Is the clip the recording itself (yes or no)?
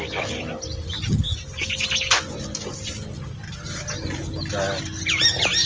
yes